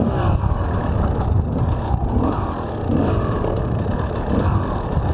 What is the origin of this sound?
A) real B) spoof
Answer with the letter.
A